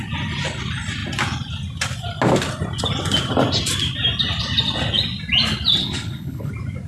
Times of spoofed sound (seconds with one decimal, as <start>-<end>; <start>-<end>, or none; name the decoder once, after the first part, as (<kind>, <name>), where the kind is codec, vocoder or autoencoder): 5.8-6.5 (codec, HILCodec)